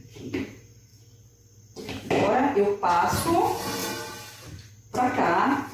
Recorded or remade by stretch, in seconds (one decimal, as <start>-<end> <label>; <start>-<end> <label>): 0.0-5.7 recorded